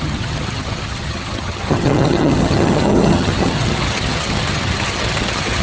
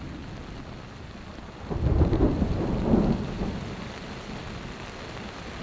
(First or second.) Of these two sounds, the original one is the second